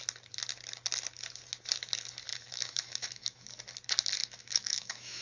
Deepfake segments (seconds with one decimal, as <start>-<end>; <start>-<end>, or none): 2.3-3.5; 4.2-5.2